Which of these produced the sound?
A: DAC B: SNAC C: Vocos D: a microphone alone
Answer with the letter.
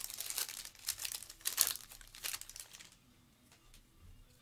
D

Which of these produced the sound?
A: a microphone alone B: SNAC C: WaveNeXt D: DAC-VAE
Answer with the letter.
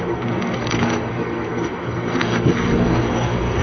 B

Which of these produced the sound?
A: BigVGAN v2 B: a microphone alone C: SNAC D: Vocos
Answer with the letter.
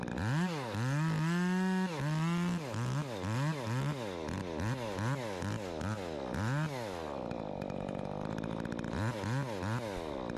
B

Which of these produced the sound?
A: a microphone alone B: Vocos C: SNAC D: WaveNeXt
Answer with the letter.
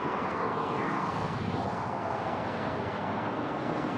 C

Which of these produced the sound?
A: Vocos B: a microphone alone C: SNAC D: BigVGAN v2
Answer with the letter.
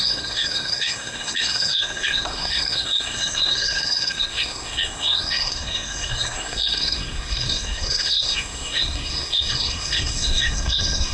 C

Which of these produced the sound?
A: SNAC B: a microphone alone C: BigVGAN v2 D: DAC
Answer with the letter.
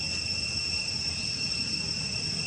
B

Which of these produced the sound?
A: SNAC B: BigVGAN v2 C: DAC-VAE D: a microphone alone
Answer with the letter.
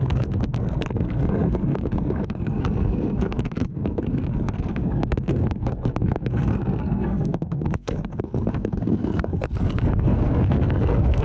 A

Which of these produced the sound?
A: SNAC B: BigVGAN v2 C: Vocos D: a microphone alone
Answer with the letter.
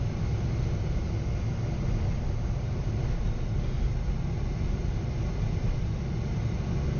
D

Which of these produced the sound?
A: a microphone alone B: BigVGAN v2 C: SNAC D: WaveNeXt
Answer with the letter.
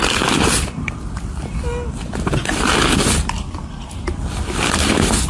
A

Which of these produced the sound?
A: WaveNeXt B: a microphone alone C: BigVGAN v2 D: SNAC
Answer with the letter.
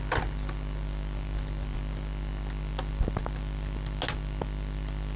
B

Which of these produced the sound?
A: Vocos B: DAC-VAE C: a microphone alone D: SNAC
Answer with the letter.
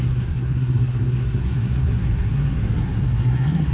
D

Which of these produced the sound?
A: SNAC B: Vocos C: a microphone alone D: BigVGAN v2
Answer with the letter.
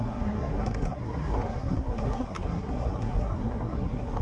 A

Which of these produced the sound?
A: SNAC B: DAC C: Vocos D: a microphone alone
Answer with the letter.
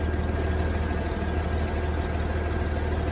D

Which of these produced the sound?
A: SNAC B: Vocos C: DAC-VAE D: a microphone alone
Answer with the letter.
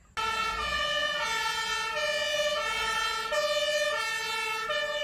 D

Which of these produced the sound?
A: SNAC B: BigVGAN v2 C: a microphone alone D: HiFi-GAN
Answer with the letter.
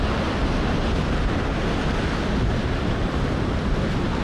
C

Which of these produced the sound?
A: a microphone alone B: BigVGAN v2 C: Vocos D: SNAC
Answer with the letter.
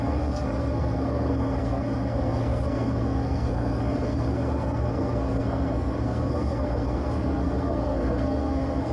D